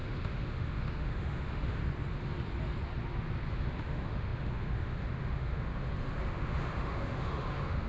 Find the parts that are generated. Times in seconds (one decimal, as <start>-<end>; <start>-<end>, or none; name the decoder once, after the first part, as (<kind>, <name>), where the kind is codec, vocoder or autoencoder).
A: 0.0-1.8 (autoencoder, DAC-VAE); 3.5-5.7; 6.2-7.9